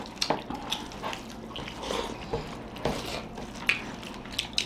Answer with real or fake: real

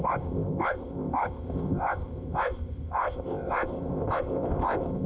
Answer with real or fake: fake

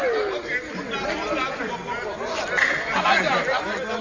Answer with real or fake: real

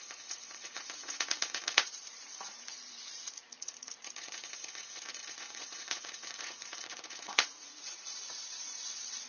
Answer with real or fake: fake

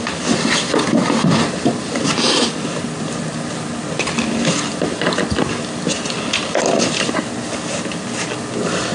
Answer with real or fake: real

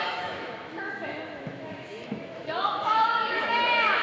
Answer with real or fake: fake